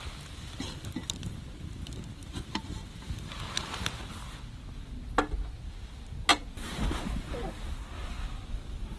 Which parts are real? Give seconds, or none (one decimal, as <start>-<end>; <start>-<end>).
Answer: 0.0-9.0